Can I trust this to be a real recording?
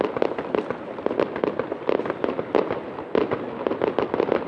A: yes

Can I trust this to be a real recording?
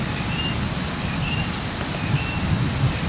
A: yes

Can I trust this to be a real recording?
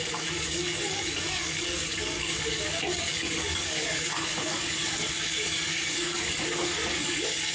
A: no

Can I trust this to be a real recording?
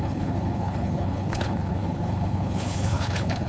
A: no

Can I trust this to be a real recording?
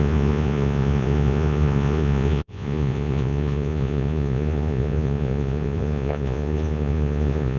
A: no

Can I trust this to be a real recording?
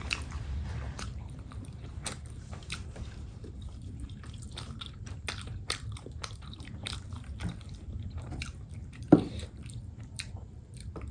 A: no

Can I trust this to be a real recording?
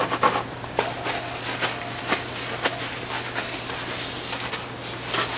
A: yes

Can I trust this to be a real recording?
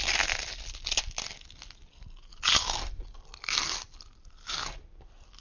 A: yes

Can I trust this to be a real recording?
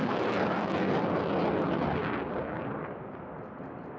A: yes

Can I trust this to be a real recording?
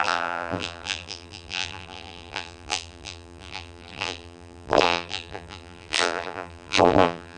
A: no